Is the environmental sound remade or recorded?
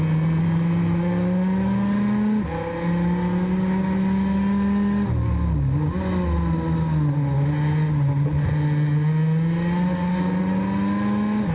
recorded